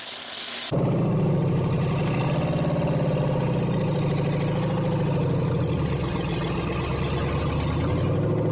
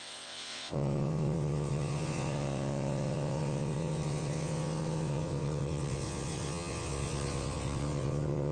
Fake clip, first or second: second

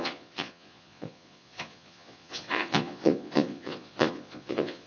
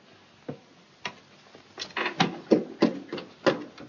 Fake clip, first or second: first